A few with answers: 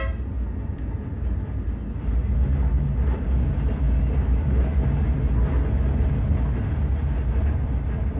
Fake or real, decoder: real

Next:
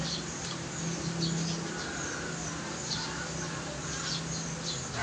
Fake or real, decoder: real